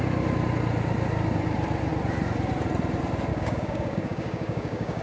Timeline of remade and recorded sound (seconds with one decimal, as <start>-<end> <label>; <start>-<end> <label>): 0.0-3.3 recorded; 3.3-5.0 remade